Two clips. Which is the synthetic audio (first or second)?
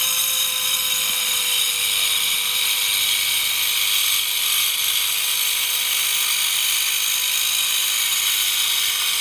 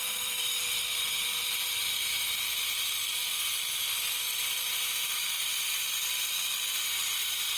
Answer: second